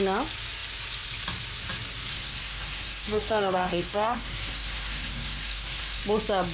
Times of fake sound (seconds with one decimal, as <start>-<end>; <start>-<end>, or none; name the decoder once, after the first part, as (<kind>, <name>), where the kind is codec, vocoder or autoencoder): 2.1-6.0 (codec, SNAC)